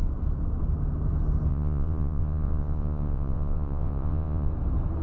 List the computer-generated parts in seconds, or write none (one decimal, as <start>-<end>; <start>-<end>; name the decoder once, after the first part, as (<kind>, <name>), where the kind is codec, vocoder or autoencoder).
1.5-4.5 (vocoder, Vocos)